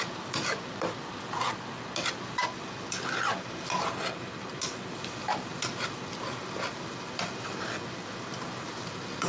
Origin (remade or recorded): recorded